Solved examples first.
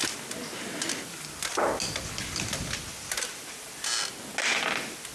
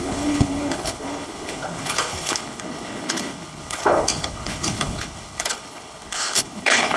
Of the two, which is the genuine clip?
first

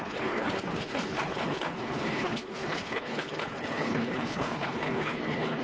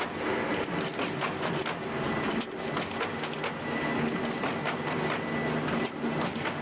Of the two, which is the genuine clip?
second